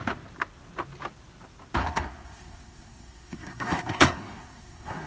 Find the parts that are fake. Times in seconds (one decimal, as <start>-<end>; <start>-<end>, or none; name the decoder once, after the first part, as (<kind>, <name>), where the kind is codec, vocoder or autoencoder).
1.8-5.1 (codec, SNAC)